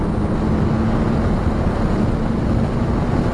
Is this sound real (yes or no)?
yes